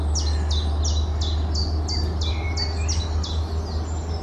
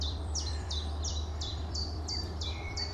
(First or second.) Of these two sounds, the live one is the first